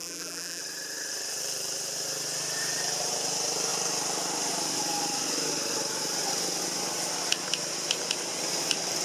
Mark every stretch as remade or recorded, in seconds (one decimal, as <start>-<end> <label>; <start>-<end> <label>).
0.0-0.6 remade; 0.6-9.0 recorded